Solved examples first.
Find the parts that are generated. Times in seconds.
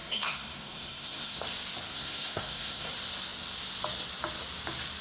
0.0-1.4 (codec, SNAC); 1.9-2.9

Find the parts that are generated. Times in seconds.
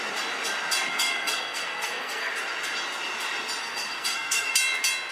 0.9-2.3 (codec, SNAC); 3.6-4.5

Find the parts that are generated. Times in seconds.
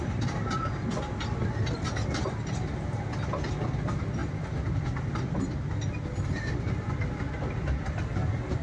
none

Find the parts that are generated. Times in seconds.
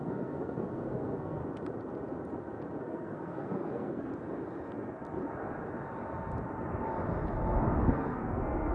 0.0-1.4 (codec, SNAC); 2.8-4.1; 7.8-8.7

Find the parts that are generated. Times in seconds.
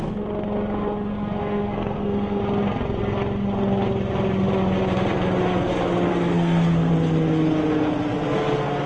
1.4-2.4 (codec, SNAC); 6.1-6.9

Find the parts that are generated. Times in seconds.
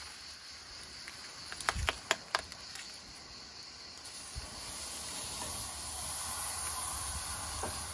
none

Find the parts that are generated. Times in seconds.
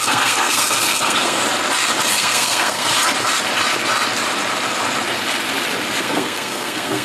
0.0-1.4 (codec, SNAC); 2.1-2.9; 6.0-7.0